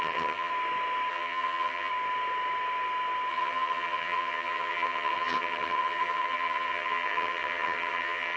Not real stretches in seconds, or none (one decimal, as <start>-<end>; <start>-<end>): 0.0-0.5; 1.1-1.9; 3.3-8.4